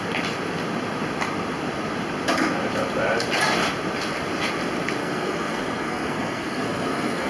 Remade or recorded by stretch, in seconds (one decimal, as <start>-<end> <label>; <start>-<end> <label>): 0.0-5.0 recorded; 5.0-7.3 remade